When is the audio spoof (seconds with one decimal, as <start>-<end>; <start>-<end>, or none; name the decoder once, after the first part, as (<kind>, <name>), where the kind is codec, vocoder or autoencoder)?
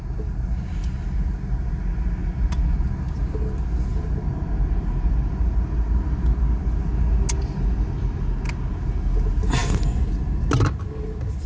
none